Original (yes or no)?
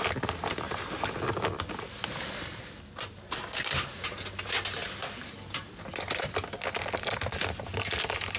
yes